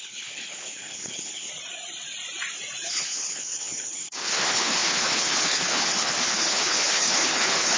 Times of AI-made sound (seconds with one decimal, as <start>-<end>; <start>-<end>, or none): 0.0-1.5; 2.9-7.8